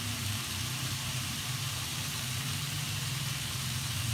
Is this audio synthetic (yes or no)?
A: yes